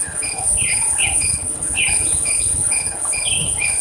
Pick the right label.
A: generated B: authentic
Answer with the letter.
A